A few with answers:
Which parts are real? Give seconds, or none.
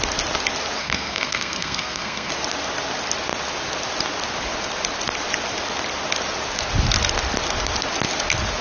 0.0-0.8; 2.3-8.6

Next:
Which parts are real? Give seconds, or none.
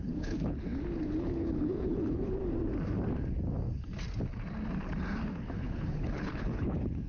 0.7-1.2; 2.4-5.3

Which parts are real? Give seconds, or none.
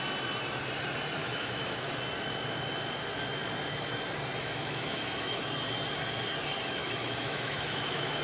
0.0-1.2; 1.9-4.4; 5.4-6.8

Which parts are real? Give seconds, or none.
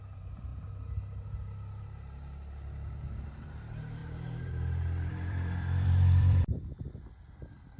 0.0-4.0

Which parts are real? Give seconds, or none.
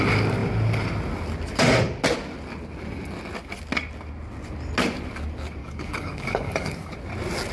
0.0-5.6; 6.9-7.5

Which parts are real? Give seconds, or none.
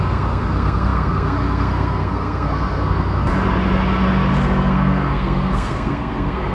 3.3-4.3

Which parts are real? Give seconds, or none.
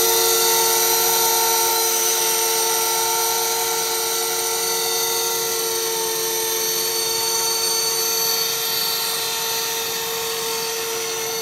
0.0-1.7; 2.2-6.9; 8.0-11.4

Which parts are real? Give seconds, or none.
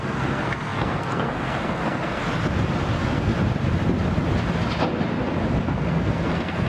2.2-2.9; 3.3-5.6